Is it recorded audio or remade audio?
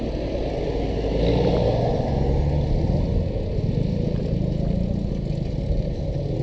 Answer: recorded